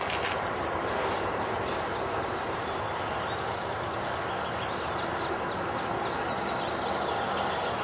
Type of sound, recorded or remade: recorded